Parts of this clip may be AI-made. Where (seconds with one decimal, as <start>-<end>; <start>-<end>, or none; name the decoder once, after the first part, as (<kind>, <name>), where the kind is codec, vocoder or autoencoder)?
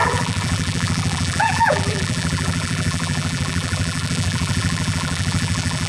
0.0-5.9 (vocoder, BigVGAN v2)